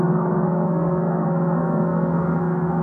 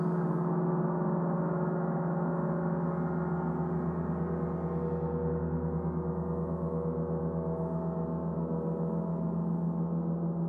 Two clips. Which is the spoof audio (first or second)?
first